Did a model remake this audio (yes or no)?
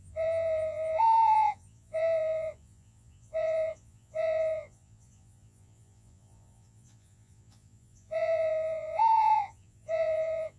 yes